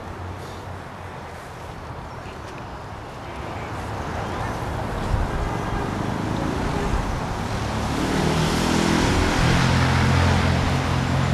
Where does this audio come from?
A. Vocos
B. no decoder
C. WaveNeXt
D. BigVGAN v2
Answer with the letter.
B